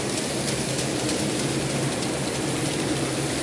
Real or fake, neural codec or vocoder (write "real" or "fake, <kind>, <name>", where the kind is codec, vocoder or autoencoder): real